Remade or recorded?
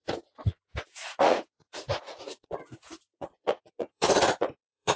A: remade